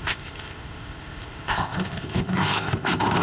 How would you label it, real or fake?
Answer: fake